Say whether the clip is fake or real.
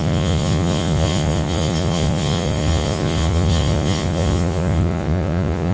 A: fake